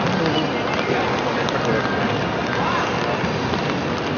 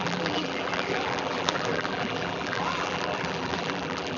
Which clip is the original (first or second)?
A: first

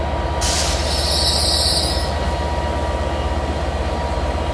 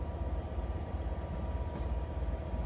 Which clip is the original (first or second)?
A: first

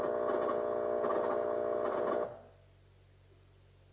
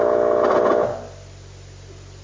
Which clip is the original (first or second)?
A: first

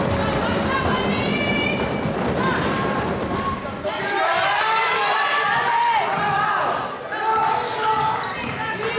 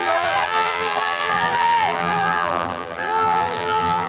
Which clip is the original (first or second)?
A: first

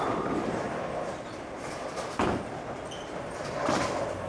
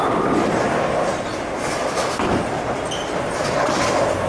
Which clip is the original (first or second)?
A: second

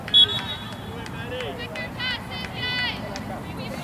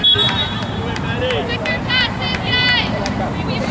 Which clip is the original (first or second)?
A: first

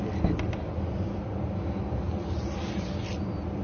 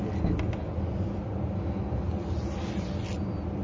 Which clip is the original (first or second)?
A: second